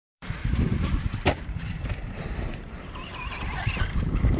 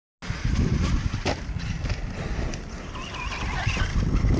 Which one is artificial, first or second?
first